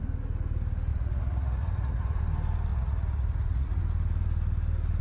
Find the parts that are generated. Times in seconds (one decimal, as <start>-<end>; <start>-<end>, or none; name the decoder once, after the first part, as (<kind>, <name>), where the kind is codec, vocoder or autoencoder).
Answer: 0.9-2.2 (vocoder, Vocos); 2.7-3.8